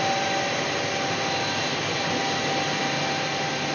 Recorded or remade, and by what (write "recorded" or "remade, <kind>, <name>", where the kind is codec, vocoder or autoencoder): recorded